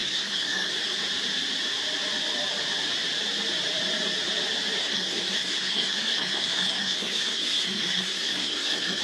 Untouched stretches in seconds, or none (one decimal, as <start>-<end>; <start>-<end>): 0.7-4.8